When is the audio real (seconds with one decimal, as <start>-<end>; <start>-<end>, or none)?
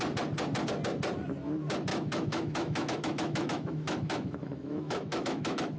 0.0-1.9